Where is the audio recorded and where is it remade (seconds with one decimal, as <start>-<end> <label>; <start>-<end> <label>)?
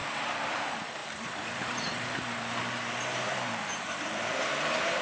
0.0-0.5 recorded; 0.5-5.0 remade